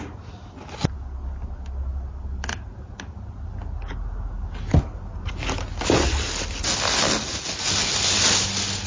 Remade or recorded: recorded